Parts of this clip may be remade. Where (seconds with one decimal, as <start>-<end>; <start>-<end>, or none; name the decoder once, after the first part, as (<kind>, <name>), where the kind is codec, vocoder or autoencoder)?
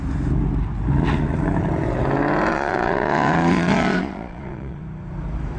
2.5-4.8 (vocoder, Vocos)